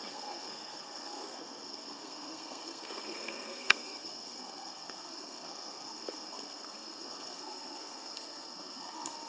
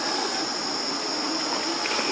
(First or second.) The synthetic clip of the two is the first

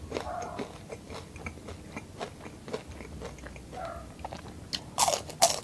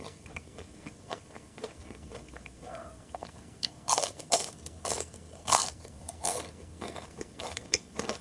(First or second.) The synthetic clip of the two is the second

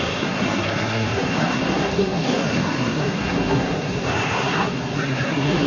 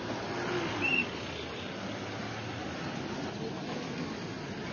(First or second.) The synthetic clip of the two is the first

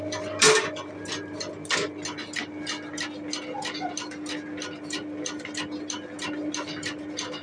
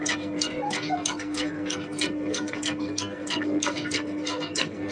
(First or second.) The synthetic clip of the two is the second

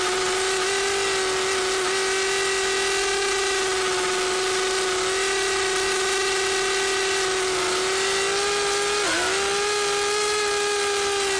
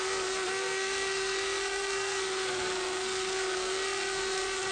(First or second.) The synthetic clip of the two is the second